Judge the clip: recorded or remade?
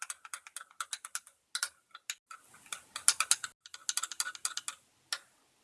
recorded